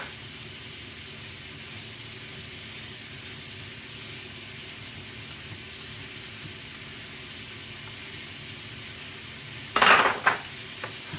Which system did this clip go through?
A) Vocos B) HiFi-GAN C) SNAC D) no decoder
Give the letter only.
D